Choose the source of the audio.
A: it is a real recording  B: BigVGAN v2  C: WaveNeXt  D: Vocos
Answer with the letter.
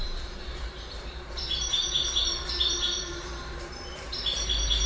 B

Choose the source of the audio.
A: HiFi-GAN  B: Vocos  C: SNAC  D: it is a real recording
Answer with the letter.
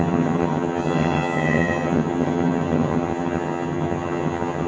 A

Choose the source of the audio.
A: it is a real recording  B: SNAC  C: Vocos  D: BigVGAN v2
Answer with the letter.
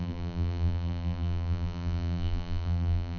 D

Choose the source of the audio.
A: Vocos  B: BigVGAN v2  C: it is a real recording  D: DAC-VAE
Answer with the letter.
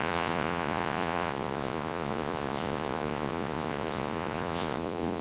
A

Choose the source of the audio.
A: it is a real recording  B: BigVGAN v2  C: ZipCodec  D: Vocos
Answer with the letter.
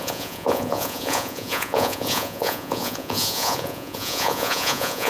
D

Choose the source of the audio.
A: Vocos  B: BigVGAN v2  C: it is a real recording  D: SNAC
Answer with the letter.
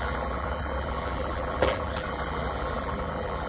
B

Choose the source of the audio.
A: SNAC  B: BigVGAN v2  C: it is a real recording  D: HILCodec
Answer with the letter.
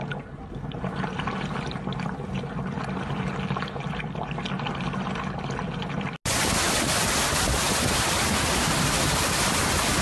C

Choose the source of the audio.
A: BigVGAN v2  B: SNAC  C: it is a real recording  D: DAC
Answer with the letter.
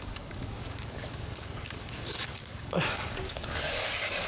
D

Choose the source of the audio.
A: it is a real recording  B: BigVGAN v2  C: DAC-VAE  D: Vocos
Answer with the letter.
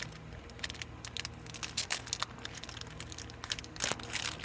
A